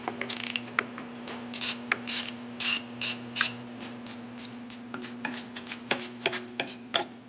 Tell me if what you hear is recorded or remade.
recorded